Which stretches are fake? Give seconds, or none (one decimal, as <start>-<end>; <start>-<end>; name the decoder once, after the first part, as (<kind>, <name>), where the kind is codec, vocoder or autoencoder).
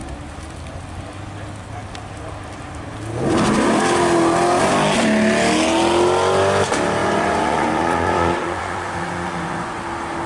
7.0-9.8 (vocoder, Vocos)